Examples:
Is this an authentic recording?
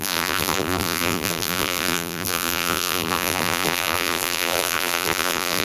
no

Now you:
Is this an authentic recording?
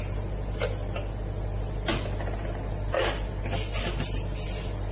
yes